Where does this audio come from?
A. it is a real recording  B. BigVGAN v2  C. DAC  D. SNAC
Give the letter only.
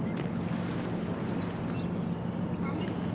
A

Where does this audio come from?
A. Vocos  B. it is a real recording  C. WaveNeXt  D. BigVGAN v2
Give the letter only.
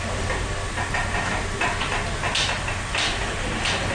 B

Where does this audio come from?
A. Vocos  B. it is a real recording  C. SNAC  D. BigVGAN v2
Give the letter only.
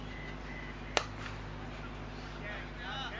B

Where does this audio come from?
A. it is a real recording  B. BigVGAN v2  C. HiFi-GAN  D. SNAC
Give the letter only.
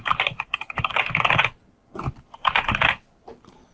A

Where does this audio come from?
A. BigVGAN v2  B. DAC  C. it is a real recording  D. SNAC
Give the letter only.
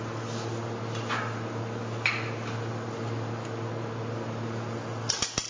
C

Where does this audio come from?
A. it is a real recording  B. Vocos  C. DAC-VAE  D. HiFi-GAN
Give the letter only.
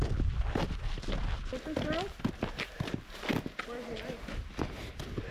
A